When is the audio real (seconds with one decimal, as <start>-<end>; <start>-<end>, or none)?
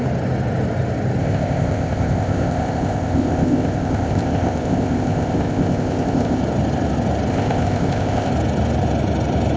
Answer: 0.0-1.2; 6.4-7.3; 8.3-9.6